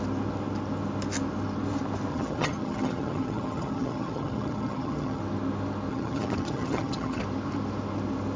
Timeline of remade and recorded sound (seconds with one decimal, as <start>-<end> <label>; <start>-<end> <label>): 0.0-2.1 recorded; 2.1-5.2 remade; 5.2-5.9 recorded; 5.9-7.2 remade; 7.2-8.4 recorded